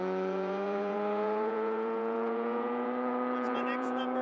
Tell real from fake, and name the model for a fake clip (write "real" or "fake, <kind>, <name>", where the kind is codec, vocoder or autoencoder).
fake, vocoder, Vocos